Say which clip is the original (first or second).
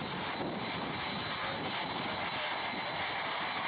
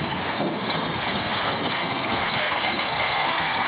first